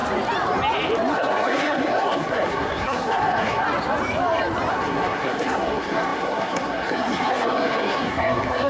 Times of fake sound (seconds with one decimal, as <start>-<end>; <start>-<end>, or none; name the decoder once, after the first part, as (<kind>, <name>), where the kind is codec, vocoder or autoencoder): 1.1-3.6 (codec, SNAC); 4.7-8.7